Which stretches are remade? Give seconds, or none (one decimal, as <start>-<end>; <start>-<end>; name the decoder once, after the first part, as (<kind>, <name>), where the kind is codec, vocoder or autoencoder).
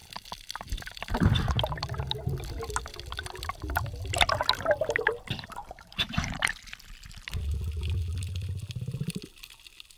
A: 5.6-6.5 (vocoder, BigVGAN v2)